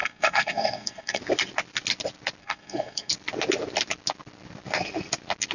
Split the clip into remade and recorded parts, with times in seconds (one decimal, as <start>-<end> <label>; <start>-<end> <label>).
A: 0.0-1.2 remade; 1.2-2.4 recorded; 2.4-3.1 remade; 3.1-5.5 recorded